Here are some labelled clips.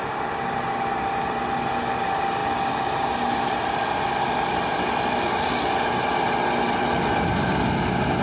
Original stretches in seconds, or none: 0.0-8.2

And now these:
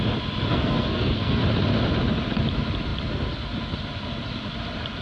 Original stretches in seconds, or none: 0.0-0.5; 1.4-5.0